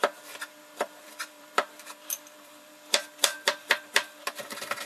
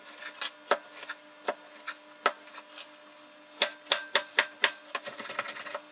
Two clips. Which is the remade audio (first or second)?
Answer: first